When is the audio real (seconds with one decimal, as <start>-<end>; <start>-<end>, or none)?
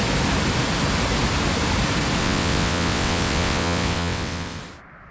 0.0-2.2; 4.6-5.1